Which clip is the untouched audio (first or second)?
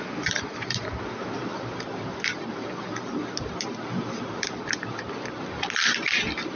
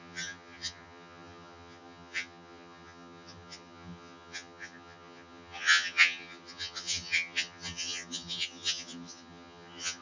first